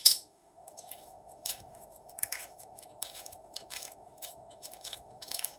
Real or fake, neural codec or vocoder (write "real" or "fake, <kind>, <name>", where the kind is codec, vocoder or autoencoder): fake, autoencoder, DAC-VAE